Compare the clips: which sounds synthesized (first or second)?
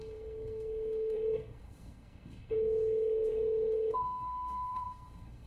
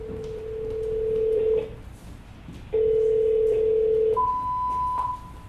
first